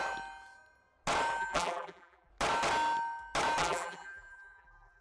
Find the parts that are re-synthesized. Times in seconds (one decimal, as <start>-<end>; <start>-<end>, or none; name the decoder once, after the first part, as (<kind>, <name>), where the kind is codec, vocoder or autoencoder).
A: 1.4-2.3 (vocoder, BigVGAN v2); 3.6-5.0